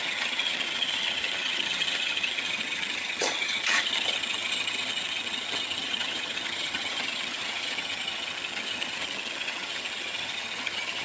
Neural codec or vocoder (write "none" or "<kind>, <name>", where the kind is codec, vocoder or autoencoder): vocoder, HiFi-GAN